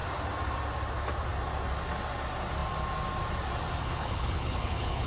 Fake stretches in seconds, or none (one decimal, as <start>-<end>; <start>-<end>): 3.8-5.1